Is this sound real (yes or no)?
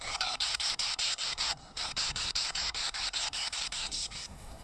no